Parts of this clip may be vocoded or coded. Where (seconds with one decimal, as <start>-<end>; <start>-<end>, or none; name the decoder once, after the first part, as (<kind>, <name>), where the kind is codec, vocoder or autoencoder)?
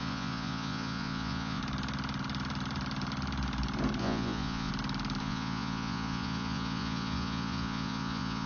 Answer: 0.0-1.6 (vocoder, Vocos); 4.0-4.7; 5.2-8.5